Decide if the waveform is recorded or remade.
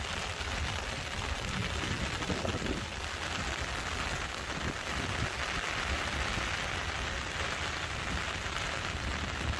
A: recorded